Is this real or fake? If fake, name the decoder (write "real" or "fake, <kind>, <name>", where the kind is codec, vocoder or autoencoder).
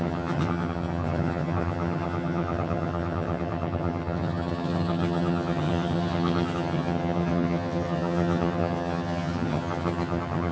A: fake, vocoder, HiFi-GAN